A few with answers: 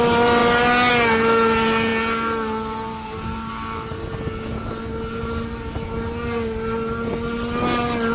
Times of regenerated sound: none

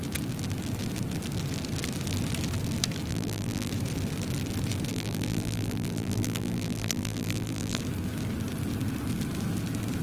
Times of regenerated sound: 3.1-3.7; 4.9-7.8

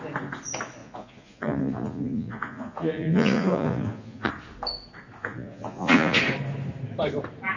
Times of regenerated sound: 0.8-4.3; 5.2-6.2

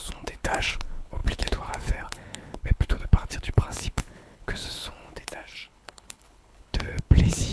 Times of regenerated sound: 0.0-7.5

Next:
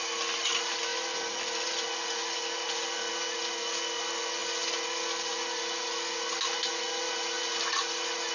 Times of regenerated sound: none

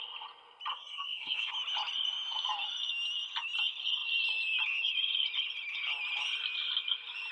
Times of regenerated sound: 0.7-1.5

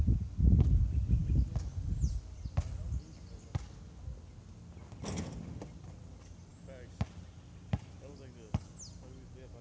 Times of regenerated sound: none